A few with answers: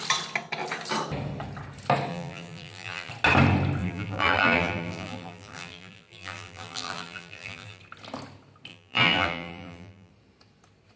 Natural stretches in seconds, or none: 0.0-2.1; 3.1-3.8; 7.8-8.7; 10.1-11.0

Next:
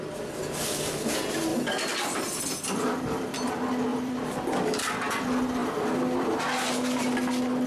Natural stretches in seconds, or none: 0.0-1.5; 2.4-3.9; 4.4-7.7

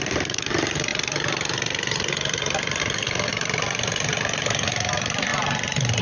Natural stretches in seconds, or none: 0.9-2.8; 5.3-6.0

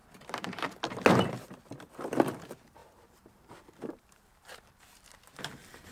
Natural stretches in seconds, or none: 1.0-2.8; 5.4-5.9

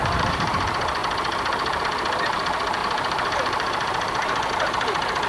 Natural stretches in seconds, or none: 0.6-2.8; 4.5-5.3